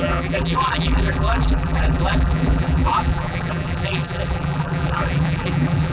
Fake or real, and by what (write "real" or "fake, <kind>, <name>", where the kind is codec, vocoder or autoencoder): fake, vocoder, BigVGAN v2